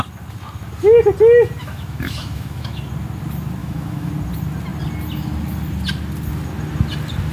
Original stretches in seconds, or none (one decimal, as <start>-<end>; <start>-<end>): 0.0-1.6; 2.8-3.6; 4.1-7.3